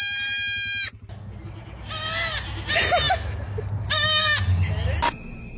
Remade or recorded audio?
recorded